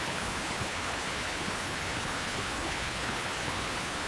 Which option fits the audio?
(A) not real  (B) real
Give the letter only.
A